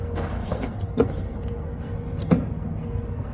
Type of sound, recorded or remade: remade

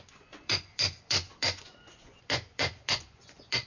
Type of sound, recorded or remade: remade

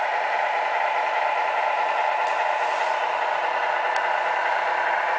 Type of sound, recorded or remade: remade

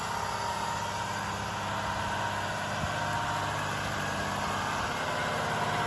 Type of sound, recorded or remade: recorded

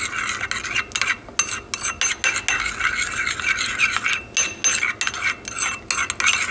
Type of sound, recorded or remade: recorded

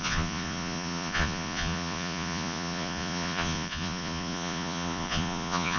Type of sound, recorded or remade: remade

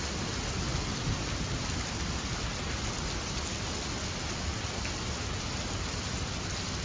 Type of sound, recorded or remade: recorded